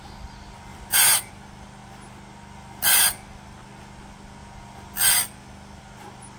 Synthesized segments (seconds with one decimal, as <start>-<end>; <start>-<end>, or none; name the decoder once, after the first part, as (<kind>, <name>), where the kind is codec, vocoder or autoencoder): 0.7-1.3 (vocoder, BigVGAN v2)